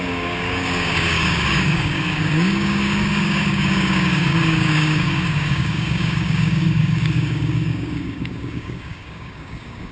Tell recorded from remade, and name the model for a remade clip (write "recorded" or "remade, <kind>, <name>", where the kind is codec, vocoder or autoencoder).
remade, codec, DAC